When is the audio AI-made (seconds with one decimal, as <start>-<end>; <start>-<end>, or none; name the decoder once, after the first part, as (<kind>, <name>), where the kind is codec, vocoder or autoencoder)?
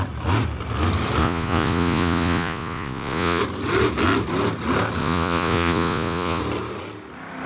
1.2-3.4 (vocoder, Vocos); 5.0-6.4